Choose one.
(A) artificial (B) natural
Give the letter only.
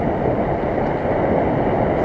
B